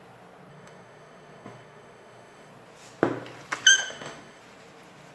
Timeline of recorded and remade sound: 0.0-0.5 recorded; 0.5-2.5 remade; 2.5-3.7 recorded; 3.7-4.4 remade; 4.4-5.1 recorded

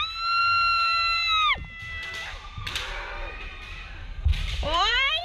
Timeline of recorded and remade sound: 0.0-4.3 recorded; 4.3-5.2 remade

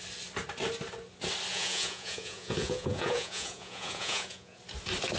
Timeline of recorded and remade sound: 0.0-1.5 recorded; 1.5-4.6 remade; 4.6-5.2 recorded

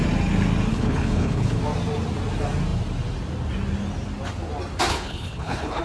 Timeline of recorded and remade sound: 0.0-0.7 recorded; 0.7-1.6 remade; 1.6-4.9 recorded; 4.9-5.8 remade

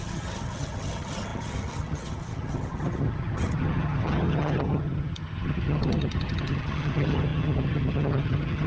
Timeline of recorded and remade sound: 0.0-8.7 remade